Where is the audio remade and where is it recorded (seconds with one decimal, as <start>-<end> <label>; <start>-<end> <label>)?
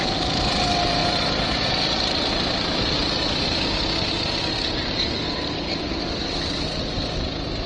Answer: 0.0-7.7 recorded